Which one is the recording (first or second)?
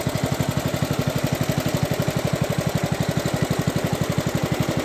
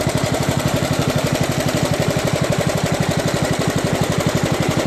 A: first